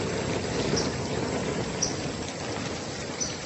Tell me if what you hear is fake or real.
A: real